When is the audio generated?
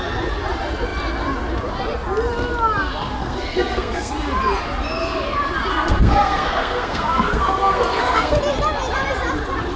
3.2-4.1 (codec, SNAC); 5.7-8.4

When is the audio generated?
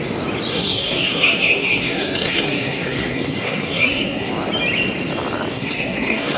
0.5-4.3 (codec, SNAC); 5.5-6.4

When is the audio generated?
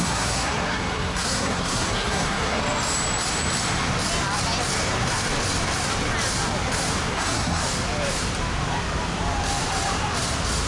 0.0-2.6 (codec, SNAC); 7.1-7.6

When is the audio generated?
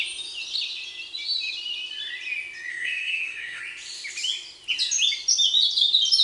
2.7-3.6 (codec, SNAC)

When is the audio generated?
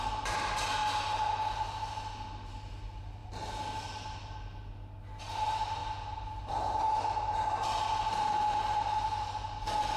none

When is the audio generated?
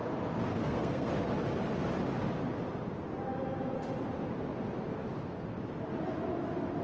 0.6-1.1 (codec, SNAC)